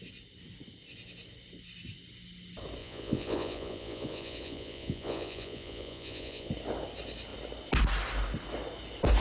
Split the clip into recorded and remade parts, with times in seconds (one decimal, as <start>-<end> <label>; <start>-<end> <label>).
0.0-2.8 recorded; 2.8-6.5 remade; 6.5-9.2 recorded